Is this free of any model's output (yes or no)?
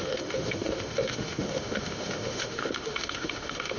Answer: no